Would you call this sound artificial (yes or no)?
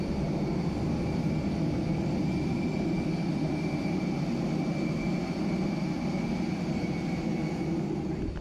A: no